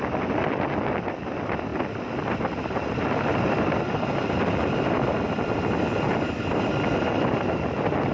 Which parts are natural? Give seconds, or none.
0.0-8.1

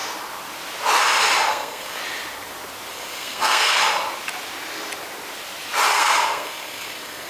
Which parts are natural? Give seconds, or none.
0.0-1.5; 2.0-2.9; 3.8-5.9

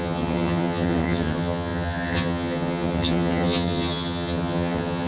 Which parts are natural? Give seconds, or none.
none